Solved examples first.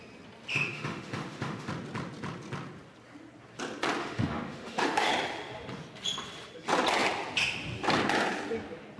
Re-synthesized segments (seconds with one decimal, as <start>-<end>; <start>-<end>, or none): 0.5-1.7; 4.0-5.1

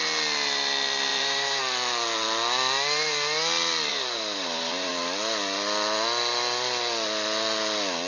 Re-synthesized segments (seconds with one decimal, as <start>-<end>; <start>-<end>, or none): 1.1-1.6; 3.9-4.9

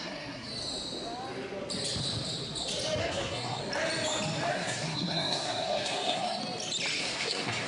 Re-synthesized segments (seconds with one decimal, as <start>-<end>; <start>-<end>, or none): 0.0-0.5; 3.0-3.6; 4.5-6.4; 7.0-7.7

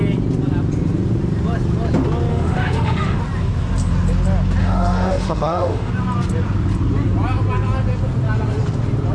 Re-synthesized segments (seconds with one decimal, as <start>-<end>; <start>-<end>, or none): 2.3-3.2; 4.6-5.9

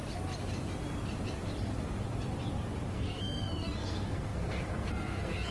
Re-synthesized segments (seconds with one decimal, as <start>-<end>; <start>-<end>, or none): 2.9-5.5

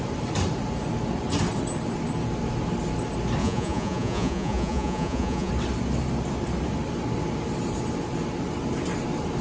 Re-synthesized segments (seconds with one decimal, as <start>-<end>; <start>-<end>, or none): 3.4-5.5

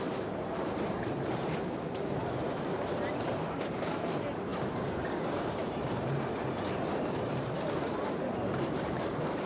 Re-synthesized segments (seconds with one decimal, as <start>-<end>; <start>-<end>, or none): 0.0-4.5; 5.3-9.5

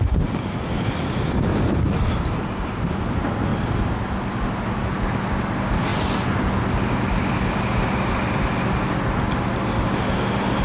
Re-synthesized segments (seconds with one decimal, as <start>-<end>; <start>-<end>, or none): none